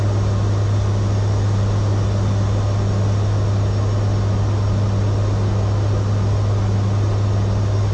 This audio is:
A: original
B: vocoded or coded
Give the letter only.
A